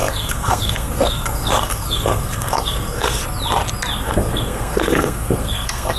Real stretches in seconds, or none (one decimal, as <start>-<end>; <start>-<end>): 3.2-4.0